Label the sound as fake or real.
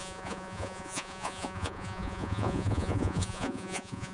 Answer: fake